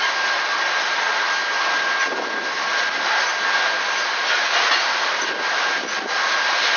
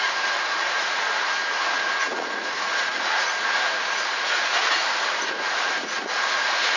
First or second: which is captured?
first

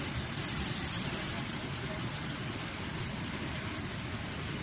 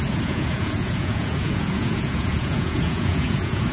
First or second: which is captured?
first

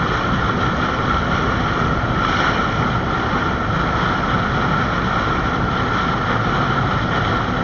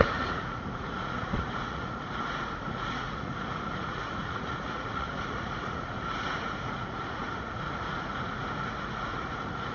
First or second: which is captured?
first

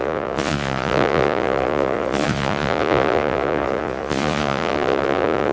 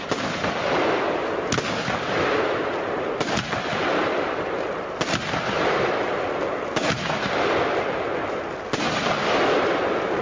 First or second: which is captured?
second